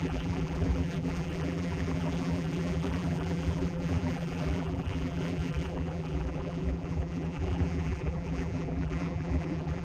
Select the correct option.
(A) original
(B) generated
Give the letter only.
B